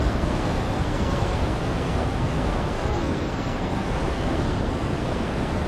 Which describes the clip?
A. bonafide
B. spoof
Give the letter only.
B